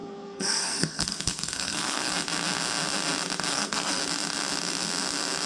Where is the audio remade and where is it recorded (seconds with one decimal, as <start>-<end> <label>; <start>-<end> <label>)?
0.0-2.1 remade; 2.1-3.5 recorded; 3.5-4.0 remade; 4.0-5.5 recorded